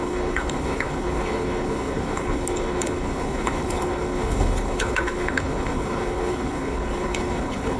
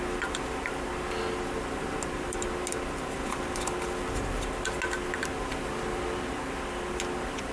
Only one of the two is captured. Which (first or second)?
second